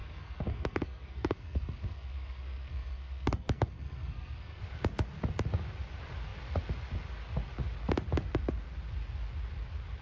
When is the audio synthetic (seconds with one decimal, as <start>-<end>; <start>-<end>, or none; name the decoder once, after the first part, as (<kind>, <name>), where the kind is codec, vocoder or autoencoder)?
0.0-4.6 (codec, SNAC)

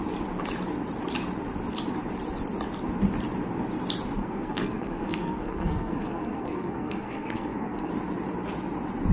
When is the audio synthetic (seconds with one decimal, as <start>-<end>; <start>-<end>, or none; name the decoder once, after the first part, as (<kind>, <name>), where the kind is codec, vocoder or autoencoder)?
4.2-7.9 (codec, SNAC)

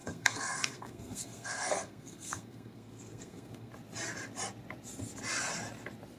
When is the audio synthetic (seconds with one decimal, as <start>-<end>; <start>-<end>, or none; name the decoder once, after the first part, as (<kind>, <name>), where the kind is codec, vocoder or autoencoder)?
0.0-3.7 (codec, SNAC)

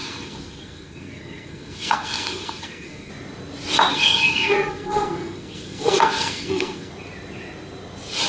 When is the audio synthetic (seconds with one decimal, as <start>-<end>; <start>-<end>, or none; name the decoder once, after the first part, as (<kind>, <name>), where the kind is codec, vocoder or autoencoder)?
0.0-3.1 (codec, SNAC); 3.9-6.9

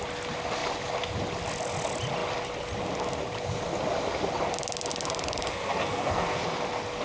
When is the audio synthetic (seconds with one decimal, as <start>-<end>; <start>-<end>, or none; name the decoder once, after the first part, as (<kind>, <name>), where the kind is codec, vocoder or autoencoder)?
5.5-6.4 (codec, SNAC)

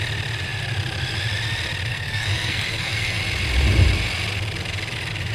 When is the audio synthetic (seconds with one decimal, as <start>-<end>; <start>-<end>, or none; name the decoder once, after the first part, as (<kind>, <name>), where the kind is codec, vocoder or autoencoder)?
1.9-3.2 (codec, SNAC)

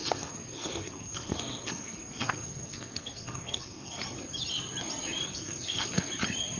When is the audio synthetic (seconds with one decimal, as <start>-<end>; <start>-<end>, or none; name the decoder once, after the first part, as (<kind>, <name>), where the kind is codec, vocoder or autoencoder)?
0.0-4.0 (codec, SNAC); 5.3-6.1

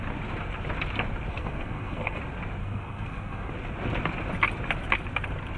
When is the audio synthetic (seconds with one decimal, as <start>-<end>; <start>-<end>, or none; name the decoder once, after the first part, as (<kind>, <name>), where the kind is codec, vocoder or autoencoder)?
1.3-2.2 (codec, SNAC); 2.6-3.5